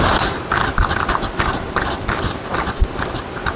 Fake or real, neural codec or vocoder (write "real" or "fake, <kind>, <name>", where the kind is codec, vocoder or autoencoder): real